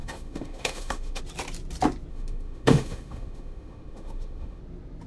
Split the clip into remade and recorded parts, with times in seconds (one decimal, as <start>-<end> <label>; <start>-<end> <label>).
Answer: 0.0-1.2 remade; 1.2-2.1 recorded; 2.1-4.6 remade; 4.6-5.1 recorded